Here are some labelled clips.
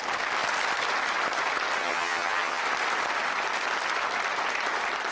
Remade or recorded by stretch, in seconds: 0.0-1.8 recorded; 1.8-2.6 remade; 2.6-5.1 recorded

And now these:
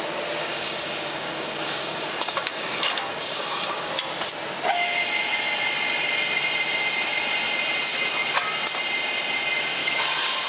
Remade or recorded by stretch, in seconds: 0.0-0.4 recorded; 0.4-3.9 remade; 3.9-9.8 recorded; 9.8-10.5 remade